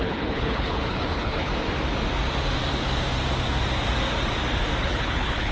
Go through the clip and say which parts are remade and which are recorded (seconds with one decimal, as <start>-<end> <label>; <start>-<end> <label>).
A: 0.0-1.5 remade; 1.5-4.8 recorded; 4.8-5.5 remade